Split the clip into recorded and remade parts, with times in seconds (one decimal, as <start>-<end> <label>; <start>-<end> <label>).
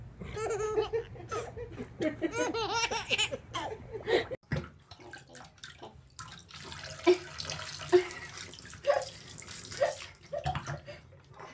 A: 0.0-11.5 recorded